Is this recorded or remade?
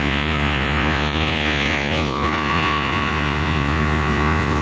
remade